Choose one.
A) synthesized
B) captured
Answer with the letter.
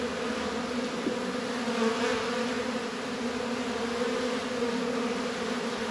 B